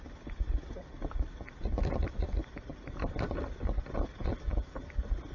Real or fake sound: real